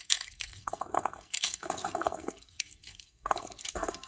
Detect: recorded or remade remade